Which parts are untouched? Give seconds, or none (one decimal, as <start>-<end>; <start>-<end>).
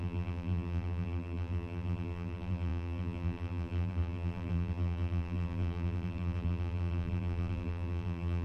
none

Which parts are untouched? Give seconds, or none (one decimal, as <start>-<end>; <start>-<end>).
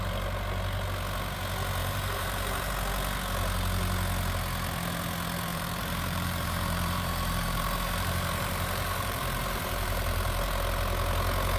0.0-1.8; 2.7-5.5; 10.5-11.6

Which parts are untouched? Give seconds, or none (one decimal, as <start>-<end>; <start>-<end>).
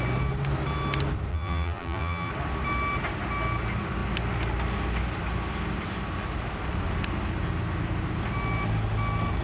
0.0-1.3; 2.3-9.4